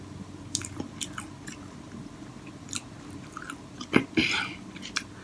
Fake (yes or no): no